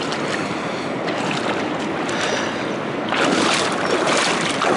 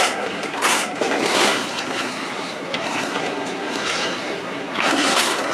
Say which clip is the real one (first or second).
first